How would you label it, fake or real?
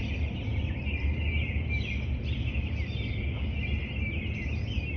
real